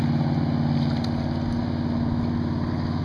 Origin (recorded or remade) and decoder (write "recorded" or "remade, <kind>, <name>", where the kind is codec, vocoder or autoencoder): recorded